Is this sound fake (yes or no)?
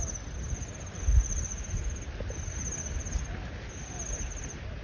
no